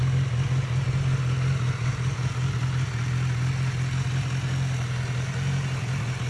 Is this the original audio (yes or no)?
yes